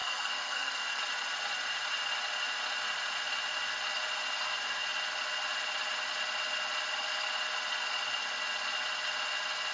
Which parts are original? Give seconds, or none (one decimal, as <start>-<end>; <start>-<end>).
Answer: 1.0-9.7